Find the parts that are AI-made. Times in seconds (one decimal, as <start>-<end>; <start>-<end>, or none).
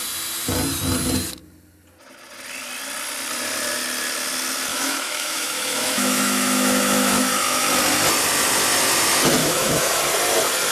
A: 4.7-7.7; 9.4-10.0